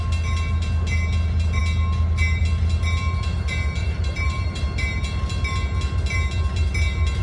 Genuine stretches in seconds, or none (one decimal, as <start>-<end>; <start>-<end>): 0.0-3.8; 4.6-7.2